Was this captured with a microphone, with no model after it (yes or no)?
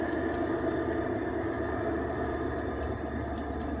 yes